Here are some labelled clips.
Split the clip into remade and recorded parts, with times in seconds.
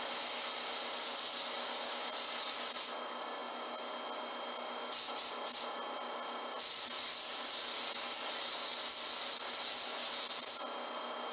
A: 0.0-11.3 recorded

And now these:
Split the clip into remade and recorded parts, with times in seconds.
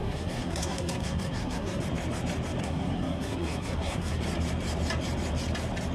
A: 0.0-1.8 remade; 1.8-2.6 recorded; 2.6-4.2 remade; 4.2-5.9 recorded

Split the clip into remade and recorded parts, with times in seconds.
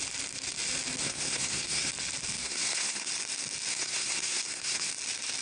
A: 0.0-1.0 recorded; 1.0-1.9 remade; 1.9-2.4 recorded; 2.4-3.1 remade; 3.1-3.7 recorded; 3.7-4.9 remade; 4.9-5.4 recorded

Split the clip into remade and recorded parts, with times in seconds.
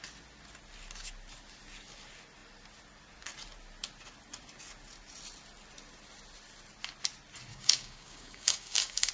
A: 0.0-7.5 recorded; 7.5-9.1 remade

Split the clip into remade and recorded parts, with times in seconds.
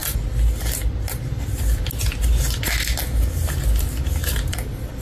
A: 0.0-5.0 recorded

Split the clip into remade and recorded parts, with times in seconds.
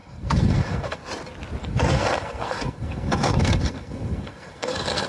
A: 0.0-1.0 remade; 1.0-1.6 recorded; 1.6-5.1 remade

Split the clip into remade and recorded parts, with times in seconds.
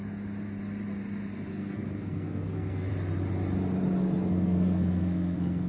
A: 0.0-1.5 recorded; 1.5-2.9 remade; 2.9-4.3 recorded; 4.3-5.7 remade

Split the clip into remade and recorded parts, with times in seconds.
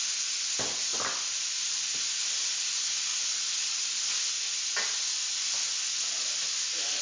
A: 0.0-7.0 recorded